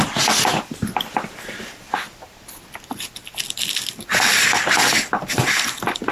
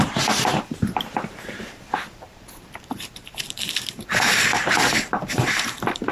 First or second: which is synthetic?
second